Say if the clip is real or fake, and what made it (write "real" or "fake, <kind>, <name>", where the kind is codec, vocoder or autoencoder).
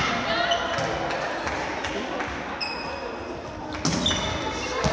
real